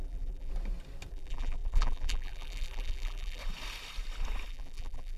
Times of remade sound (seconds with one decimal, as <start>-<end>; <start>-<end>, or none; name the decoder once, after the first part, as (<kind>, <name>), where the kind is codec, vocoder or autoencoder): 0.0-0.5 (vocoder, BigVGAN v2); 1.1-3.4; 4.5-5.2